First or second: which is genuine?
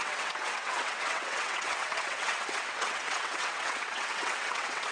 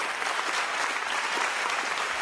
second